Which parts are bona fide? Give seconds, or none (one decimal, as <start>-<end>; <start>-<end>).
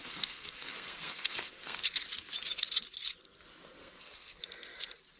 1.8-3.8; 4.4-5.2